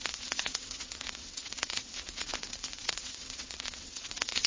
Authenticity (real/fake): fake